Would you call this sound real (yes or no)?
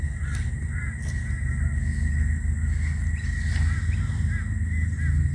yes